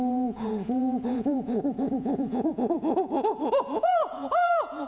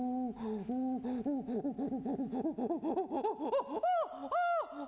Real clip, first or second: second